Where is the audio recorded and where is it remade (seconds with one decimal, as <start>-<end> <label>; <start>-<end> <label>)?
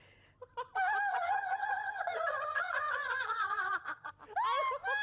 0.0-1.1 recorded; 1.1-4.1 remade; 4.1-5.0 recorded